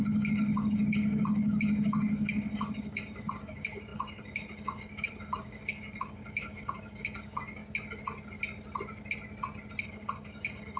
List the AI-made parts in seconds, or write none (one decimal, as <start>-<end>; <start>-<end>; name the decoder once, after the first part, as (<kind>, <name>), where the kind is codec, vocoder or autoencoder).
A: 0.0-7.6 (codec, DAC); 9.8-10.8